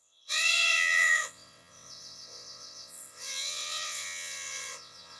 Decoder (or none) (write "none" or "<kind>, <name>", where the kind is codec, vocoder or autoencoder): vocoder, WaveNeXt